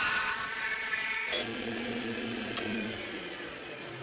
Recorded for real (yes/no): no